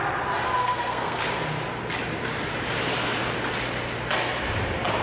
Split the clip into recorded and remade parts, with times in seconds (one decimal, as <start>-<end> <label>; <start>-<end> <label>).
0.0-0.6 recorded; 0.6-1.2 remade; 1.2-5.0 recorded